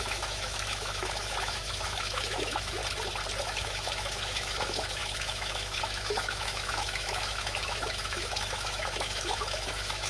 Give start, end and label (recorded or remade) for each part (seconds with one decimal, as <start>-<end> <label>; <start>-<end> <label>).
0.0-2.8 remade; 2.8-3.4 recorded; 3.4-10.1 remade